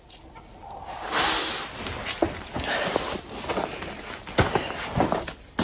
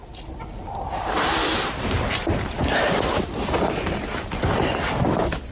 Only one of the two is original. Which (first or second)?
first